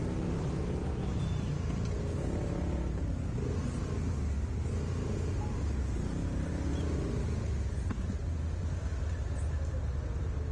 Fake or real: real